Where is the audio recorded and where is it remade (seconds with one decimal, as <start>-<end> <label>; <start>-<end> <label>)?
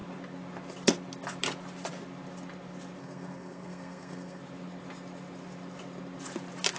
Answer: 0.0-3.0 recorded; 3.0-4.4 remade; 4.4-6.8 recorded